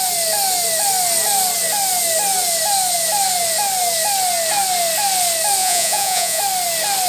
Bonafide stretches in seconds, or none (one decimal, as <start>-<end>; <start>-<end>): 0.0-5.6; 6.4-7.1